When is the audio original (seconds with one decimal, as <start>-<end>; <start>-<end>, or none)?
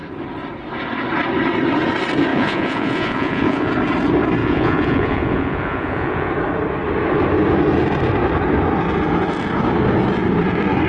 0.0-2.3; 3.7-4.4; 6.3-10.9